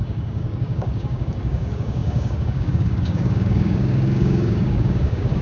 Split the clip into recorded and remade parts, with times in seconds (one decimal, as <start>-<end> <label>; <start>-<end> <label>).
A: 0.0-5.4 remade